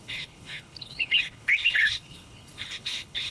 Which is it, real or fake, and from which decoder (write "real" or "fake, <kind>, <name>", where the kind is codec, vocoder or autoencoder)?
fake, codec, HILCodec